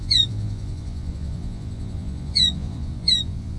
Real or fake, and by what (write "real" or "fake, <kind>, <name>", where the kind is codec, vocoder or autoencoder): fake, vocoder, Vocos